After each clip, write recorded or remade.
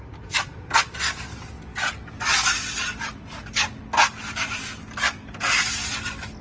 recorded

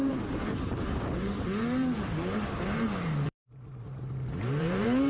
remade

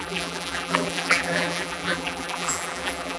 remade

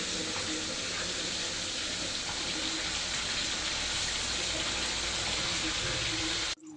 recorded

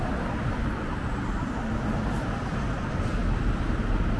recorded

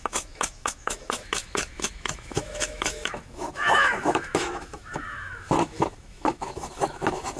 remade